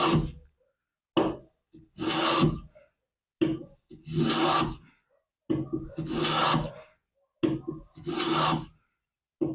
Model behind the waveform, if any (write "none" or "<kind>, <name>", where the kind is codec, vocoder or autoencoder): none